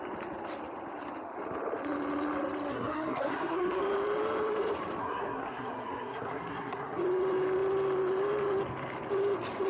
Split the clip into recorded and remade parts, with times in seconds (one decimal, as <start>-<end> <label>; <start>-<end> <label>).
0.0-2.7 recorded; 2.7-3.8 remade; 3.8-5.0 recorded; 5.0-7.0 remade; 7.0-9.7 recorded